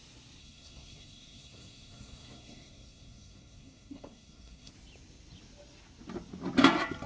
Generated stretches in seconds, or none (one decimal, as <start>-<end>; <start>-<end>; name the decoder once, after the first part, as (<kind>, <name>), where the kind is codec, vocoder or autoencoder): 0.4-4.7 (codec, SNAC)